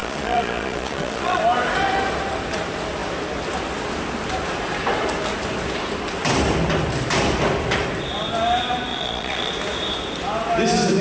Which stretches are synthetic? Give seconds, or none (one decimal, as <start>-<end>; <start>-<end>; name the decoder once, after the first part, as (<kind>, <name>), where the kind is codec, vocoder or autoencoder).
0.0-1.4 (vocoder, Vocos); 8.9-9.5